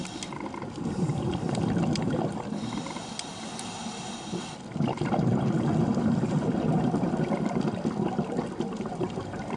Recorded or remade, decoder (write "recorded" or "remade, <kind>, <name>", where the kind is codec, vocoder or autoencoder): recorded